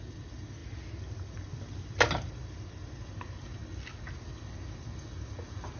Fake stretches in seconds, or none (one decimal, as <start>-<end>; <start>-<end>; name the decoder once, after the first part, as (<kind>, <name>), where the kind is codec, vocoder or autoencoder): none

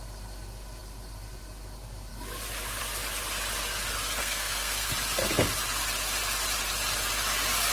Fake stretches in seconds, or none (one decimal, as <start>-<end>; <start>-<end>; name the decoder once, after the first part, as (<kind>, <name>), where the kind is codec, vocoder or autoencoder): 4.2-4.9 (codec, SNAC)

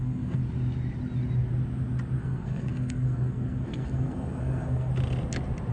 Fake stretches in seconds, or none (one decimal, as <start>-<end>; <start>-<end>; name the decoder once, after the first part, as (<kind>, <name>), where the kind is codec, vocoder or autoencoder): 0.0-0.4 (codec, SNAC); 2.2-4.9